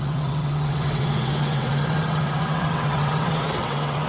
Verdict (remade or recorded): remade